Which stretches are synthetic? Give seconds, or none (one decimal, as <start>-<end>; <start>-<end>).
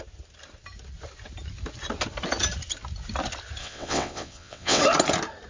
3.6-4.8